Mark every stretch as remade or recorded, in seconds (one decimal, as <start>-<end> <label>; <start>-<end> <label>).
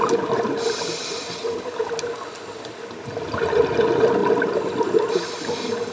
0.0-5.9 recorded